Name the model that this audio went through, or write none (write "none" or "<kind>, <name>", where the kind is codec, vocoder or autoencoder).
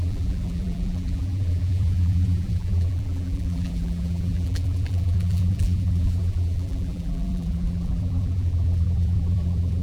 vocoder, BigVGAN v2